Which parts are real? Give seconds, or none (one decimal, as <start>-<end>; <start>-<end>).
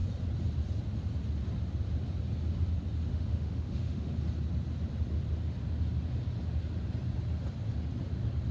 0.0-3.1; 4.2-8.5